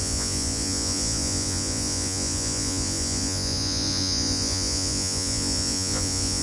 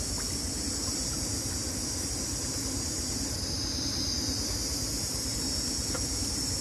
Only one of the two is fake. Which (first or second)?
first